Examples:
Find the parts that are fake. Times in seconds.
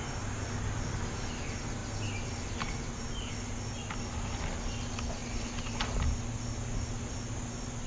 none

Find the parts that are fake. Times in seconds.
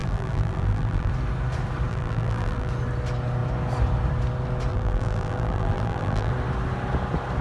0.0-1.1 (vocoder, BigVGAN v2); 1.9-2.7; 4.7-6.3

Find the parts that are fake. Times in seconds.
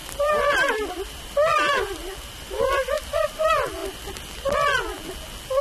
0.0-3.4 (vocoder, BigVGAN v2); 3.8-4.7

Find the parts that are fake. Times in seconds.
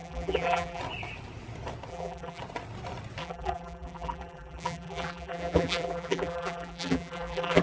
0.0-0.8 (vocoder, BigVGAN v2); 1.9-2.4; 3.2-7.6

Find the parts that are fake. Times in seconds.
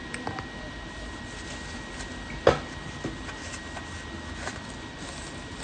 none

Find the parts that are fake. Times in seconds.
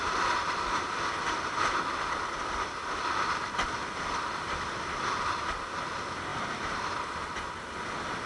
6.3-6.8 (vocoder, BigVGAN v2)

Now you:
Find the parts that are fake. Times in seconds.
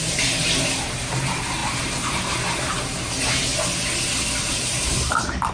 0.0-3.5 (vocoder, BigVGAN v2); 4.4-5.5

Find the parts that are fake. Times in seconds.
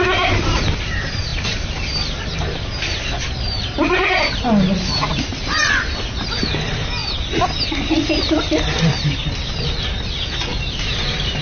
1.3-4.1 (vocoder, BigVGAN v2)